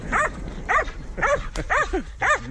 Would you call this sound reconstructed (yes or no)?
yes